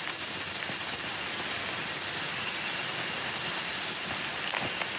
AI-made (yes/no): no